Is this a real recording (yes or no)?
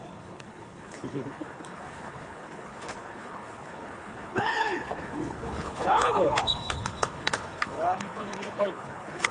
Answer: no